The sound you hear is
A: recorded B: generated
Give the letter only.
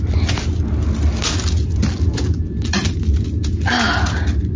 A